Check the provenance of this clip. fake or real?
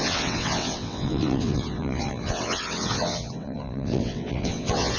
fake